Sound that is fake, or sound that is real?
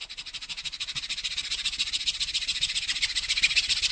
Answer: real